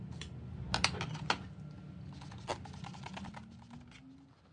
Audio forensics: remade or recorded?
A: recorded